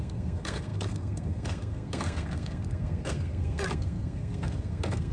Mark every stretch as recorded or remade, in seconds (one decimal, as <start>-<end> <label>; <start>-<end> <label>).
0.0-5.1 remade

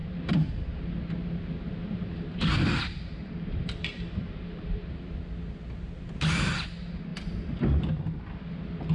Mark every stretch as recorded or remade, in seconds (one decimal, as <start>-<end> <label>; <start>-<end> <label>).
0.0-5.2 remade; 5.2-8.9 recorded

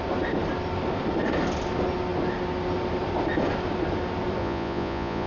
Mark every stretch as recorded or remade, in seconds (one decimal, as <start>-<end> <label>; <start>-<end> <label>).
0.0-4.4 recorded; 4.4-5.3 remade

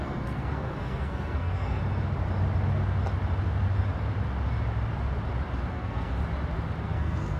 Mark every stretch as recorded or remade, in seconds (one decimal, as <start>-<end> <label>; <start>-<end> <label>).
0.0-1.8 remade; 1.8-5.7 recorded; 5.7-6.2 remade; 6.2-6.8 recorded; 6.8-7.4 remade

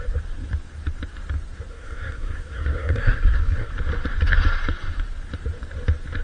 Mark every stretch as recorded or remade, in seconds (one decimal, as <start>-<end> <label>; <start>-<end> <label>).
0.0-1.7 recorded; 1.7-3.7 remade; 3.7-6.2 recorded

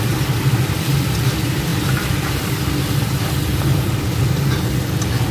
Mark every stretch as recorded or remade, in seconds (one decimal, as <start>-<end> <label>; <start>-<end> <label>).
0.0-5.3 remade

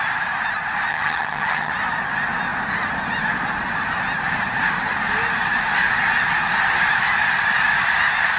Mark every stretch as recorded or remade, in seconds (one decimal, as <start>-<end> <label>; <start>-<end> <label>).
0.0-0.9 recorded; 0.9-1.7 remade; 1.7-8.4 recorded

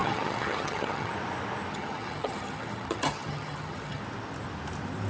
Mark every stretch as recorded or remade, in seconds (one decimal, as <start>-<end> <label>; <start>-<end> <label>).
0.0-1.1 remade; 1.1-1.7 recorded; 1.7-4.0 remade; 4.0-5.1 recorded